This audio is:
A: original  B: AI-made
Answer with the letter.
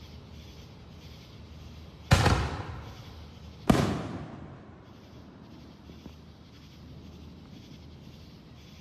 A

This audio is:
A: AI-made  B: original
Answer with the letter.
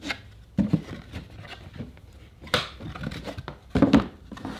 B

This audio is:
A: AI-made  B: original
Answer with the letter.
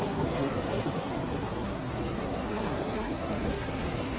A